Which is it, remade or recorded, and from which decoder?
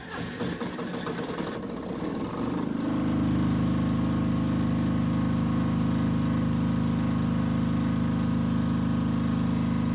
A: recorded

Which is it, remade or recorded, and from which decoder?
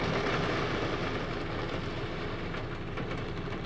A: recorded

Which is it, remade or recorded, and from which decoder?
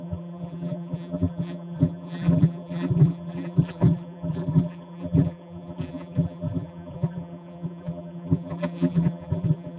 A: remade, vocoder, BigVGAN v2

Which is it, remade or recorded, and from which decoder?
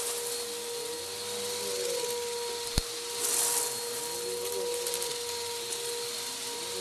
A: recorded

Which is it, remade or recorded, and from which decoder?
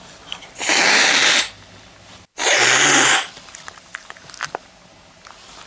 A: recorded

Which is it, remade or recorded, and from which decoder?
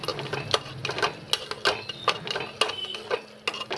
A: recorded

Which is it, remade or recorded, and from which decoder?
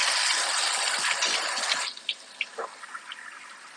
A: recorded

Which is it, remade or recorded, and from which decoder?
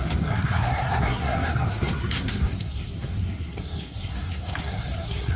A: remade, codec, SNAC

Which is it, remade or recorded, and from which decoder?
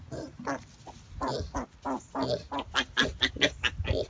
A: recorded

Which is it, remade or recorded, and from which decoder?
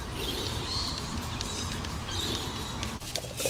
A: remade, vocoder, BigVGAN v2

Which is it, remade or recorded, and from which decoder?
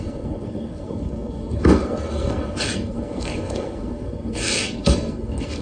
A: remade, codec, SNAC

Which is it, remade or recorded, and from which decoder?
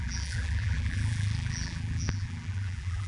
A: remade, vocoder, BigVGAN v2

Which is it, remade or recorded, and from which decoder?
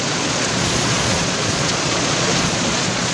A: remade, vocoder, Vocos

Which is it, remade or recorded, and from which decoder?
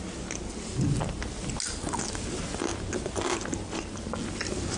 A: recorded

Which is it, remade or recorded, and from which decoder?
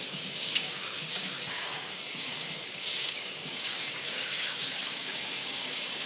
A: remade, codec, DAC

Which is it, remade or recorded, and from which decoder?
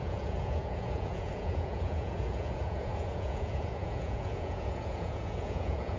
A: remade, vocoder, Vocos